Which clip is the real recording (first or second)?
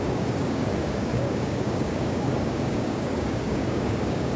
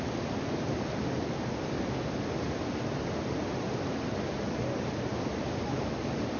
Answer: second